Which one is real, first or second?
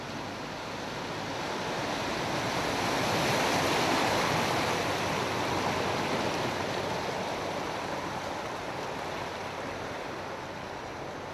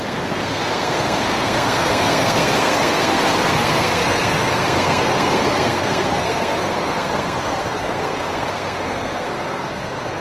first